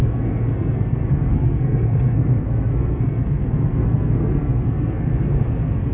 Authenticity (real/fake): fake